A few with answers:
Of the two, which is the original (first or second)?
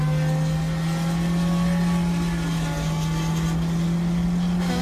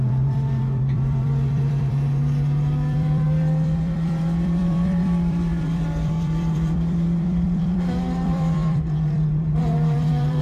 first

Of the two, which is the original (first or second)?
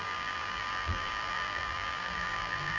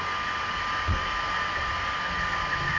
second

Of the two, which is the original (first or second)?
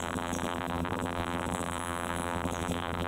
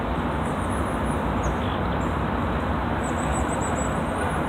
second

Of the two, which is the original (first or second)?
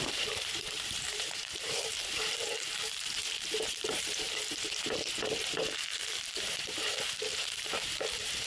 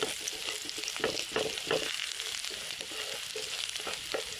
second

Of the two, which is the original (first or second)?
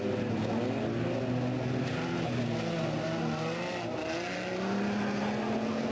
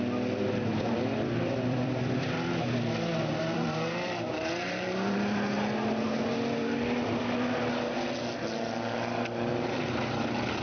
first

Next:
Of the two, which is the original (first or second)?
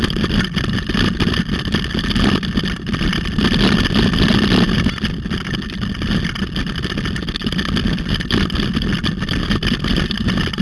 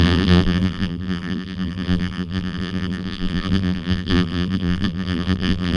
first